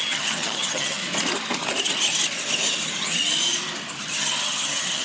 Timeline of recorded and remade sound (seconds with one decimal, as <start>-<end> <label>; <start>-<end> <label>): 0.0-1.0 remade; 1.0-4.0 recorded; 4.0-5.0 remade